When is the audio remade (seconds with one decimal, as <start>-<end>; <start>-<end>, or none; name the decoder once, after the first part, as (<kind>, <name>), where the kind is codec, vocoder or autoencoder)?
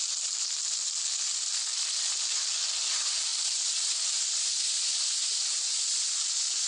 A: none